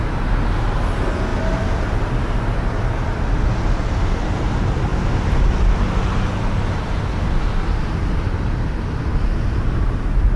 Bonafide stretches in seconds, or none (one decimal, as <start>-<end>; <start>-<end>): 0.0-10.4